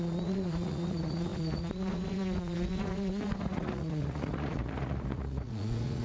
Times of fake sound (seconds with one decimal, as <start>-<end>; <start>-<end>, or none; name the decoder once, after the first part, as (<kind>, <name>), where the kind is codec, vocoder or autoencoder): 0.0-6.0 (vocoder, Vocos)